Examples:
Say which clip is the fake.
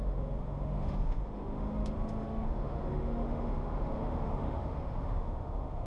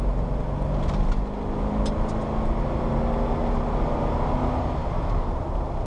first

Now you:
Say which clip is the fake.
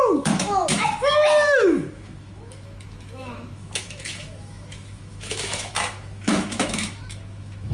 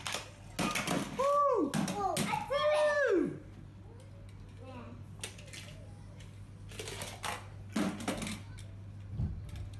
first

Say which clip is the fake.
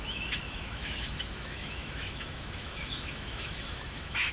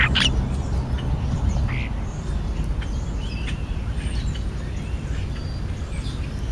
first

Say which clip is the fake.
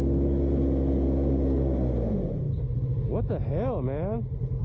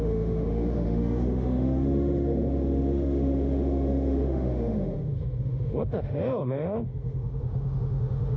second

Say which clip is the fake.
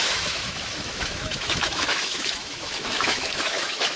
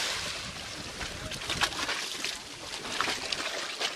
first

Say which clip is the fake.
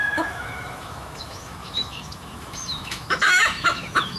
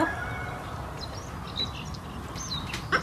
first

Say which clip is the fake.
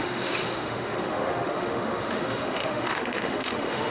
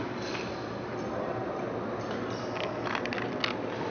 first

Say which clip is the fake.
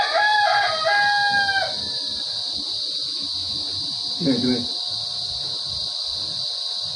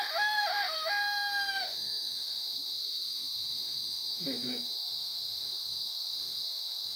second